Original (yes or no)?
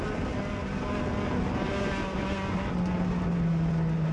yes